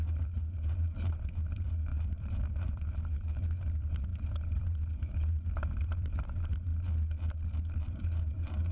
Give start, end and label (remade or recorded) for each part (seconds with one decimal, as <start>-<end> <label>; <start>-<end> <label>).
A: 0.0-6.7 remade; 6.7-7.8 recorded; 7.8-8.7 remade